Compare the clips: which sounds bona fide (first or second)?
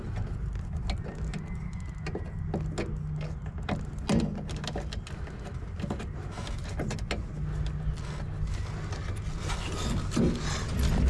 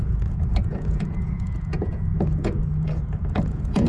first